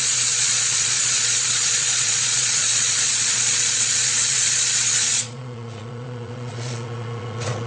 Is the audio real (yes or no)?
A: no